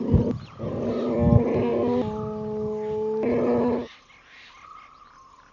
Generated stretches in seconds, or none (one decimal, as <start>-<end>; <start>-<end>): none